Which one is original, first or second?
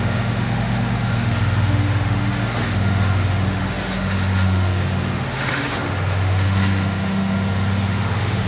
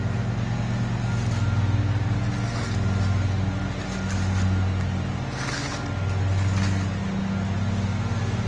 second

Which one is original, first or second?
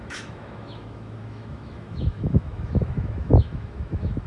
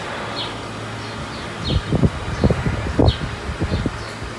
second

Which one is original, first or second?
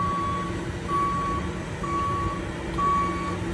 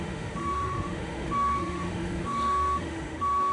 first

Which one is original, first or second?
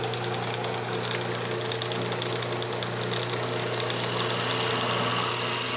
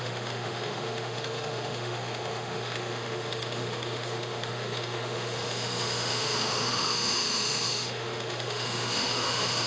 first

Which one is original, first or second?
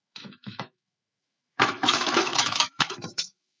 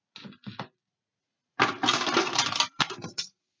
second